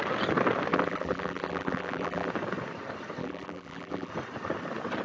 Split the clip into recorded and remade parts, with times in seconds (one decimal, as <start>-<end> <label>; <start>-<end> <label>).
0.0-0.7 recorded; 0.7-2.3 remade; 2.3-3.2 recorded; 3.2-4.1 remade; 4.1-5.0 recorded